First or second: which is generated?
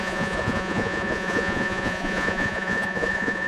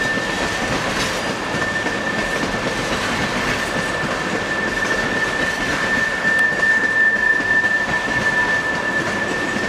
first